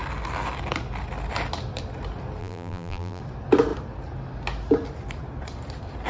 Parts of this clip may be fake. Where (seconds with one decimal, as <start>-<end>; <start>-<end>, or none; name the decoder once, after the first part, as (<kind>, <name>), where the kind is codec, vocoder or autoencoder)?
2.4-3.2 (vocoder, BigVGAN v2)